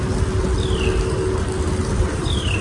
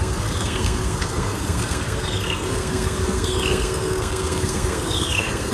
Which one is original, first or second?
first